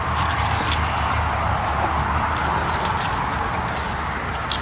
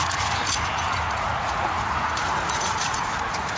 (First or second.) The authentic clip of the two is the first